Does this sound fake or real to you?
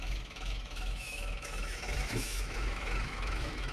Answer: fake